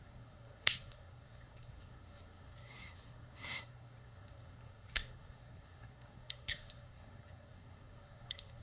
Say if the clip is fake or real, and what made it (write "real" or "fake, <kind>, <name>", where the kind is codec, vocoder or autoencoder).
fake, codec, SNAC